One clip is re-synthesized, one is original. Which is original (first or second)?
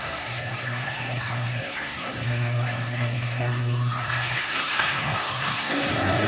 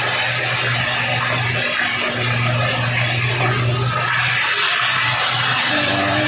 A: second